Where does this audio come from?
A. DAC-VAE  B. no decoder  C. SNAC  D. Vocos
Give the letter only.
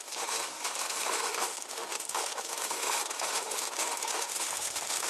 A